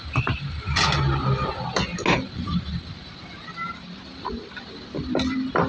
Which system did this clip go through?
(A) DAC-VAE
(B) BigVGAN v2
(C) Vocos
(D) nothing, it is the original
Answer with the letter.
D